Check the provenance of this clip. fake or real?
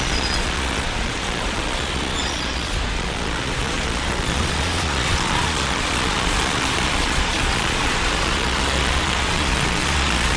fake